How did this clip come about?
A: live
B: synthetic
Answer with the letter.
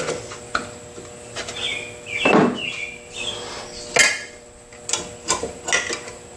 A